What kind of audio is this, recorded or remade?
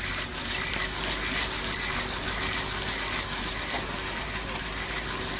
recorded